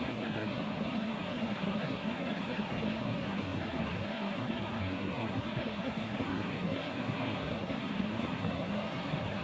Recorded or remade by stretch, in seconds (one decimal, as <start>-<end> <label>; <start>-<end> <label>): 0.0-9.4 remade